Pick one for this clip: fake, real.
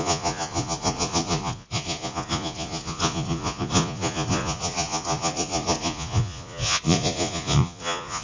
fake